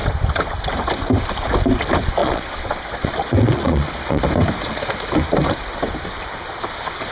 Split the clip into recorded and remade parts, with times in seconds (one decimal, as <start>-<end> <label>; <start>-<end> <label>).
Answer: 0.0-2.2 recorded; 2.2-4.2 remade; 4.2-7.1 recorded

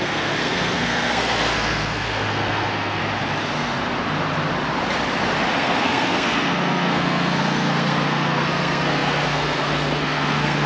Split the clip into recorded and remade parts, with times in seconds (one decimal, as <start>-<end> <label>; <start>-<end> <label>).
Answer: 0.0-3.0 remade; 3.0-5.5 recorded; 5.5-10.7 remade

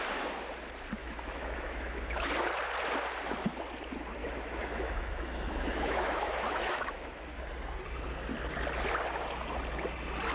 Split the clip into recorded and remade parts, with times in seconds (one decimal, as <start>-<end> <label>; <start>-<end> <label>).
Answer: 0.0-1.0 recorded; 1.0-2.3 remade; 2.3-4.2 recorded; 4.2-7.4 remade; 7.4-10.3 recorded

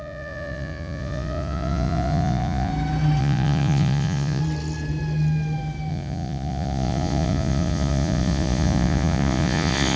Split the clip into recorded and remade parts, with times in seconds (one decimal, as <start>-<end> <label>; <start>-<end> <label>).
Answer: 0.0-2.7 remade; 2.7-3.2 recorded; 3.2-4.4 remade; 4.4-5.9 recorded; 5.9-10.0 remade

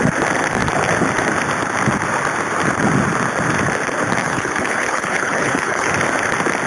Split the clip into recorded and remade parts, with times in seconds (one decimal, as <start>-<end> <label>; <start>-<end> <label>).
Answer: 0.0-4.2 recorded; 4.2-5.9 remade; 5.9-6.7 recorded

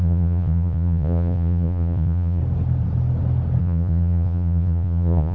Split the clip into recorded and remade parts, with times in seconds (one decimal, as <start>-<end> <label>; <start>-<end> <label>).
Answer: 0.0-2.4 remade; 2.4-3.6 recorded; 3.6-5.3 remade

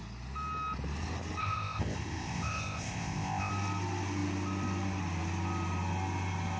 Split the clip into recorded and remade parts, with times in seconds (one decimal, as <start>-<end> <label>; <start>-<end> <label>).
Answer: 0.0-1.4 recorded; 1.4-3.5 remade; 3.5-6.6 recorded

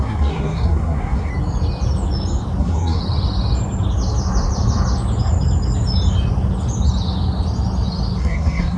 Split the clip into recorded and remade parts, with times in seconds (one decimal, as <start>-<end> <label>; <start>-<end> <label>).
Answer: 0.0-1.3 remade; 1.3-2.6 recorded; 2.6-3.0 remade; 3.0-8.2 recorded; 8.2-8.8 remade